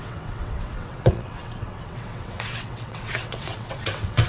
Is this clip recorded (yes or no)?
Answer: no